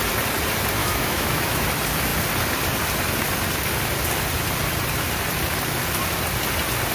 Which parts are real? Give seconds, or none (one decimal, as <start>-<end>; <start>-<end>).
0.0-0.8; 1.7-6.9